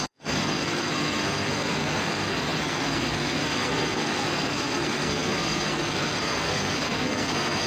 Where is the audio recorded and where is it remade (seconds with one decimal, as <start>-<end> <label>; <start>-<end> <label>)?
0.0-7.7 remade